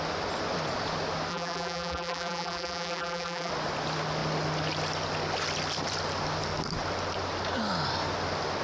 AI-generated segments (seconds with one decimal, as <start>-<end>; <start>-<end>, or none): 1.3-3.5